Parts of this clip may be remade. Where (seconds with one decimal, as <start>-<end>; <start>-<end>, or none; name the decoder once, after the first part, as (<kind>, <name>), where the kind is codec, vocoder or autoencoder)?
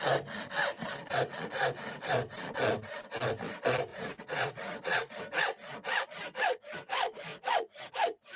3.9-5.2 (vocoder, Vocos); 7.3-7.9